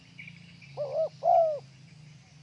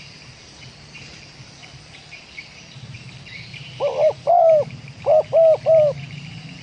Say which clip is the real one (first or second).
first